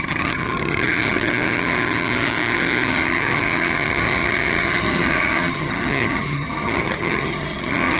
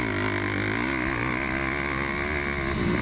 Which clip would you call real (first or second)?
second